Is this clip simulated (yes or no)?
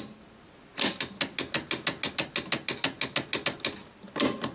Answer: no